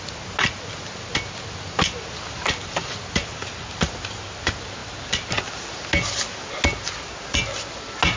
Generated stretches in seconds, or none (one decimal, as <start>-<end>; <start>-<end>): none